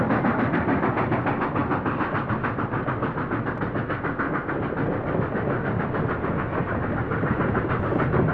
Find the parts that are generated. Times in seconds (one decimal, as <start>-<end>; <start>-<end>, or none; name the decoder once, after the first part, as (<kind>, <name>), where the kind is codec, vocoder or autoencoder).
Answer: none